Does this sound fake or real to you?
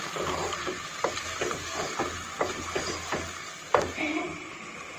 real